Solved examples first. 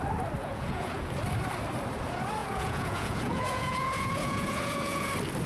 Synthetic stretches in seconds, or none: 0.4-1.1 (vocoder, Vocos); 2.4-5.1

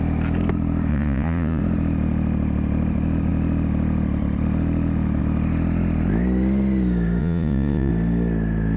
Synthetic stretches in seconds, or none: 0.9-1.6 (vocoder, Vocos); 7.2-7.9